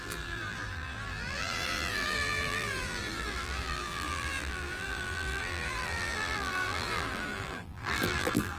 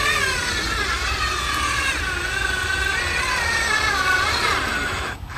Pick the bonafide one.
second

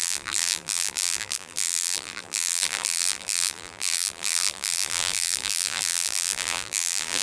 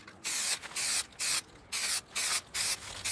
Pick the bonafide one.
second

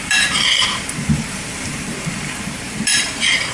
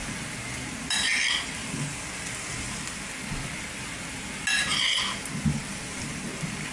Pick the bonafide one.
second